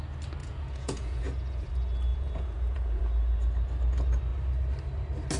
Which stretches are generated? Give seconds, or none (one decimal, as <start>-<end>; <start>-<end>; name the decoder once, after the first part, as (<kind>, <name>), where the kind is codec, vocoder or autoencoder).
0.4-1.7 (vocoder, Vocos); 2.1-3.0